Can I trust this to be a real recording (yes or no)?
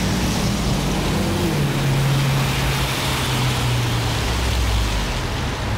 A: yes